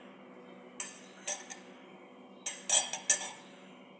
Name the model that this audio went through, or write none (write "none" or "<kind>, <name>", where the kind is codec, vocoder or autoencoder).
none